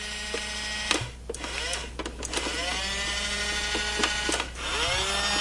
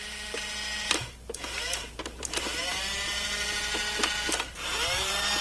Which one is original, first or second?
first